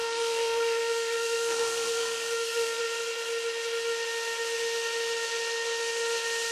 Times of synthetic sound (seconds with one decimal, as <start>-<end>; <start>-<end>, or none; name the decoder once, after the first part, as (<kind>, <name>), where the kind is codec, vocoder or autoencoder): 0.0-2.8 (codec, SNAC)